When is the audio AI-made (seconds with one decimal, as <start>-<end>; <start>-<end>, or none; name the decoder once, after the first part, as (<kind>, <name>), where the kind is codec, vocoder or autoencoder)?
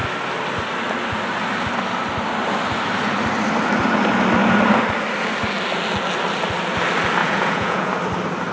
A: 7.2-7.9 (vocoder, Vocos)